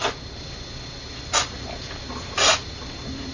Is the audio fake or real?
real